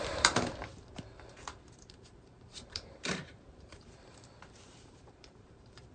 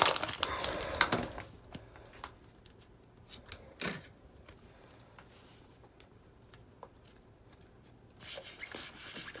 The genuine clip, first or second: second